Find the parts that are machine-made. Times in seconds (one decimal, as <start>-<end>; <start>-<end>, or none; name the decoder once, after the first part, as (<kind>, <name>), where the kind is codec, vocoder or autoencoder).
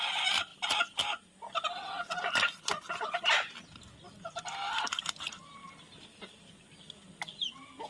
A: none